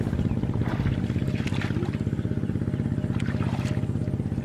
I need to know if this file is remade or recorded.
recorded